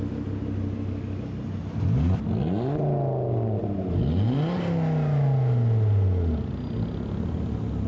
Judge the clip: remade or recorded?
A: recorded